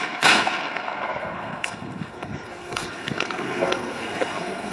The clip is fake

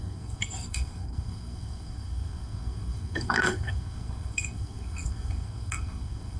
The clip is fake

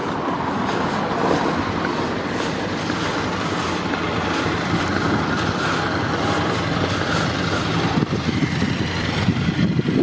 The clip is fake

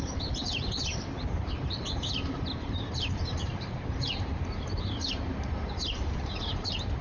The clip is fake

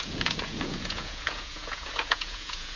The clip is fake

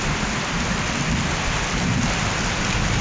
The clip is real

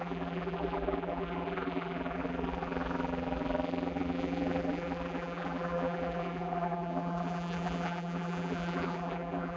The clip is fake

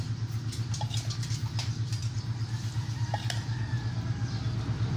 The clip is real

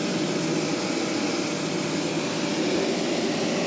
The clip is real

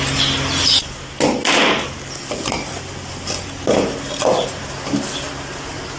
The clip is real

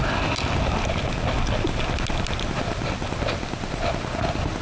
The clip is real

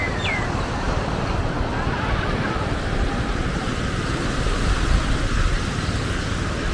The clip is real